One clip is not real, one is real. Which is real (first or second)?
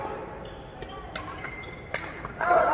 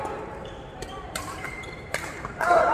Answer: first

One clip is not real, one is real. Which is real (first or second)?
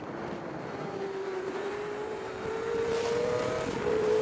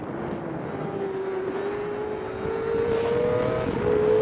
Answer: second